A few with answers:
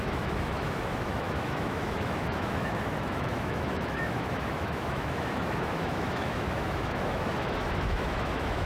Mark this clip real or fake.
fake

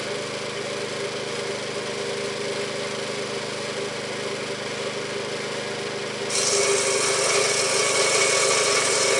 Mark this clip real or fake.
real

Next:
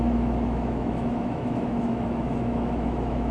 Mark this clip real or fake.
fake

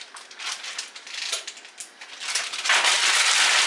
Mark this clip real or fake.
real